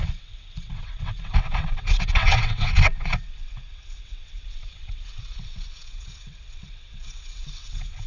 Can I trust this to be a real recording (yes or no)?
no